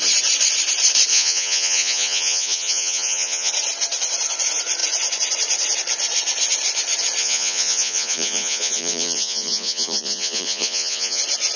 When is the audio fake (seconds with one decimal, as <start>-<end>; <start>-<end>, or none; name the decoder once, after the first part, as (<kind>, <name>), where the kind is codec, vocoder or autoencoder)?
1.1-3.5 (vocoder, Vocos); 7.2-11.2